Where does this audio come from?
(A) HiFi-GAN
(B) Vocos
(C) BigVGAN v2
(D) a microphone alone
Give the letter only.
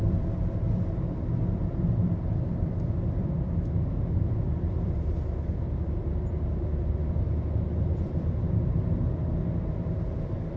C